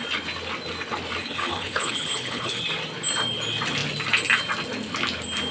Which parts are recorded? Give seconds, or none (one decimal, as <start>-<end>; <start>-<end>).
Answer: 0.0-1.2; 2.6-5.5